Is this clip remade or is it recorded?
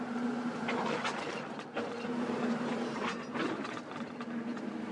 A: recorded